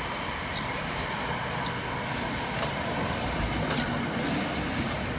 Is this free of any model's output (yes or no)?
yes